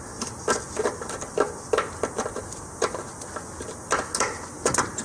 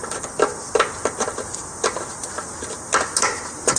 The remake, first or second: first